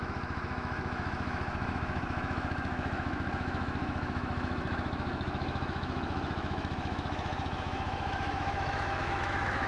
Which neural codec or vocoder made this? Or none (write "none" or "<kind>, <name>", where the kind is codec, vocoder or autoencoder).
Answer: autoencoder, DAC-VAE